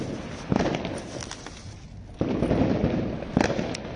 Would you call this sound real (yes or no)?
yes